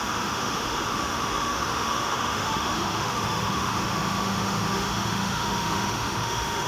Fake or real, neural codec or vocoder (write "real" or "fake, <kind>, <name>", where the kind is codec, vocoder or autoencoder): fake, autoencoder, DAC-VAE